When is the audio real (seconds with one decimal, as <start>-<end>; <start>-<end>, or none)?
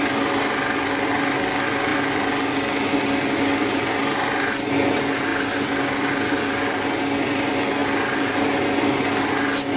0.0-9.8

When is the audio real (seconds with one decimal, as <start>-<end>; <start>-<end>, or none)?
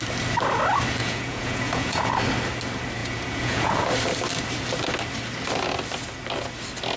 0.0-1.0; 2.1-3.0; 3.8-7.0